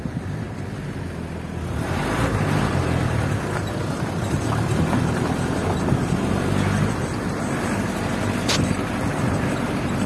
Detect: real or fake real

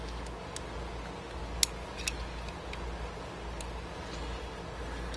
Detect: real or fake real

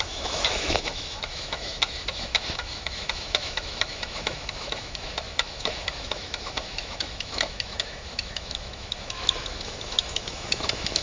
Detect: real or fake fake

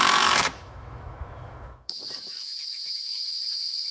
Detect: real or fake fake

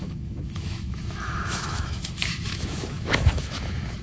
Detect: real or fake fake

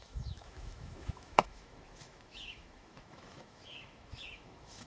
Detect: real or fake fake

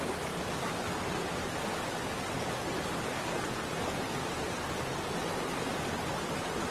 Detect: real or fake real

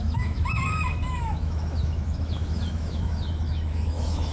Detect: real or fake fake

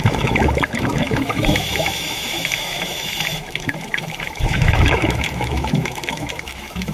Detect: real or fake fake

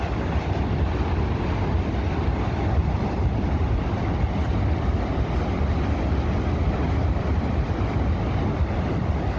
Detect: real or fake real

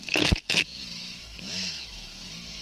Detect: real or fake fake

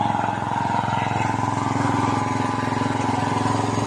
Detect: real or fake real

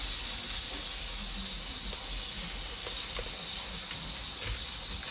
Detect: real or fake real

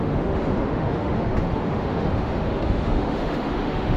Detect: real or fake fake